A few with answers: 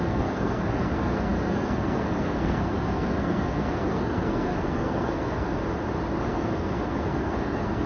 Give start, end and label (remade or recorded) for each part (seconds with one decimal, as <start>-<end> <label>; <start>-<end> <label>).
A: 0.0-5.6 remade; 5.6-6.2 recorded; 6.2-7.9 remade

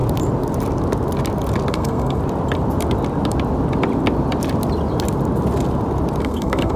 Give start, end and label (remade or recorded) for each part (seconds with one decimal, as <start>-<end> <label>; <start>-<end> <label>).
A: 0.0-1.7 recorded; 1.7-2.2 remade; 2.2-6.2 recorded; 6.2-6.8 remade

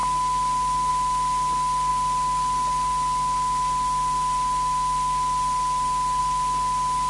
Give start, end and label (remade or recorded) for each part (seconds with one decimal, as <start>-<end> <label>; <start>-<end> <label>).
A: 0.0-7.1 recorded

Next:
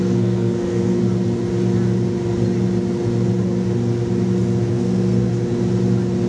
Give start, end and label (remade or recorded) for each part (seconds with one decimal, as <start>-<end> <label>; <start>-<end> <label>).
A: 0.0-1.0 remade; 1.0-4.7 recorded; 4.7-5.3 remade; 5.3-6.3 recorded

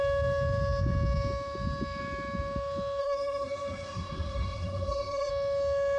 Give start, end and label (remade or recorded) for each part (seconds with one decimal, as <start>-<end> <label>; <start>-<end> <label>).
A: 0.0-3.0 recorded; 3.0-5.3 remade; 5.3-6.0 recorded

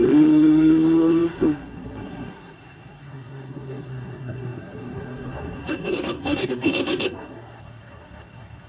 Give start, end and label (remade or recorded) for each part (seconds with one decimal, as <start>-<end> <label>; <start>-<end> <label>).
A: 0.0-8.7 remade